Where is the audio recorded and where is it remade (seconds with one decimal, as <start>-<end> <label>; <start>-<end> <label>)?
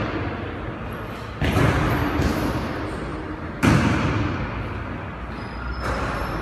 0.0-6.4 recorded